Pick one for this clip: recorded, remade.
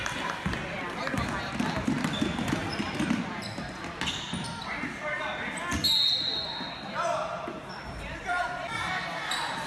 recorded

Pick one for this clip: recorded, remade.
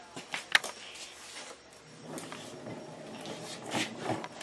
recorded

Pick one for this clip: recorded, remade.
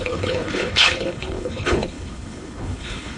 remade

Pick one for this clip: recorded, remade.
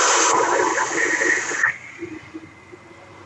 recorded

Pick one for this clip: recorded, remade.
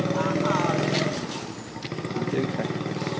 recorded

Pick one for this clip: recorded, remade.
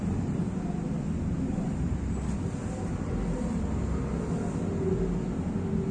recorded